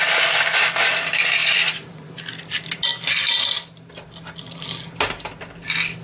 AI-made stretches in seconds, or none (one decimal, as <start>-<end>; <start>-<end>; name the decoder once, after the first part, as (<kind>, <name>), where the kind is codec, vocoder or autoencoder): 1.4-2.1 (vocoder, Vocos)